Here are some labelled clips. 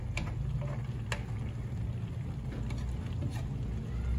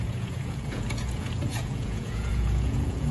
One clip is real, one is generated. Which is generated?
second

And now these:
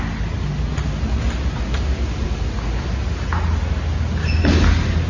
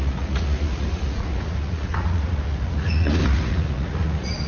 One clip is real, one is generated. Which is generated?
second